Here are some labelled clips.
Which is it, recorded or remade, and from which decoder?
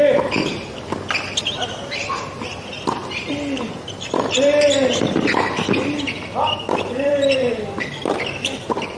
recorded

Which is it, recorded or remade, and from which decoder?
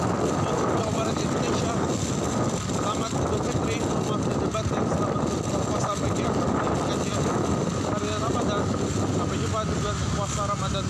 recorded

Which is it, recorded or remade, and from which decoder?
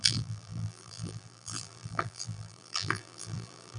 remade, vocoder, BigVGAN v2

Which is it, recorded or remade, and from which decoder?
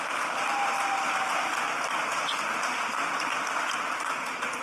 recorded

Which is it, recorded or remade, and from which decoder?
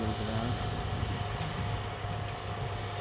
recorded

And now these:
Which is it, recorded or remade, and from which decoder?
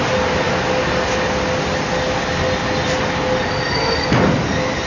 recorded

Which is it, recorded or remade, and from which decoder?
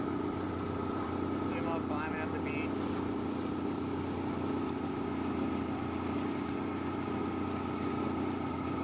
recorded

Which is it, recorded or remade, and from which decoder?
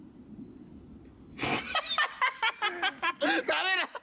recorded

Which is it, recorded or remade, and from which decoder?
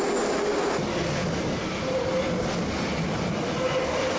recorded